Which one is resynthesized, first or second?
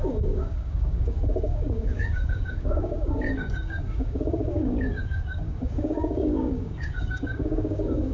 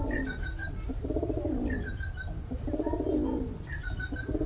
first